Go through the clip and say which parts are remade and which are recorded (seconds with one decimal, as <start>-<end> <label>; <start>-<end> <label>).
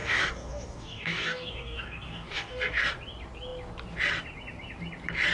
0.0-2.8 remade; 2.8-5.3 recorded